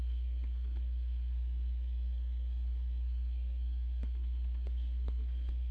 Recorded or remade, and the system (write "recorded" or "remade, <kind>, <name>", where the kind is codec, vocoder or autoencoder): remade, codec, SNAC